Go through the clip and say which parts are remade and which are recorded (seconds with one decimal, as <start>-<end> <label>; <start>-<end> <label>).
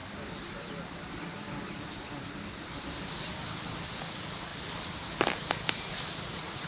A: 0.0-4.0 recorded; 4.0-4.5 remade; 4.5-6.2 recorded; 6.2-6.7 remade